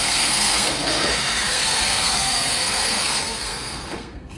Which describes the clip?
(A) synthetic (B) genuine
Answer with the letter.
A